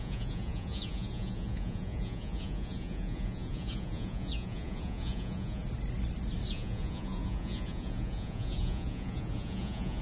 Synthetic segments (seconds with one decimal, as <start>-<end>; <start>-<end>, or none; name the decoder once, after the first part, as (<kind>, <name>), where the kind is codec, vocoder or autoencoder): 0.0-5.6 (vocoder, Vocos); 6.5-10.0